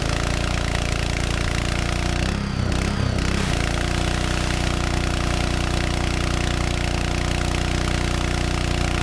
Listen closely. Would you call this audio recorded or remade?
recorded